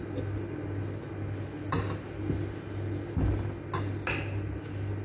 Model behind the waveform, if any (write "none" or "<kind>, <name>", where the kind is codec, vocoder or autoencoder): none